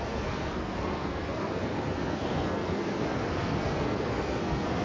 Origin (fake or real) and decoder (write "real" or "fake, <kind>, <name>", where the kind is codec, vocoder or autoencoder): fake, codec, SNAC